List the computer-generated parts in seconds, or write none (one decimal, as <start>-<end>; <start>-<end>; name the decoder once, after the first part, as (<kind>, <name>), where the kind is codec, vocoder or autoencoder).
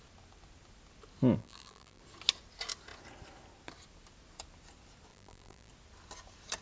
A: 1.4-2.0 (vocoder, BigVGAN v2); 5.1-5.7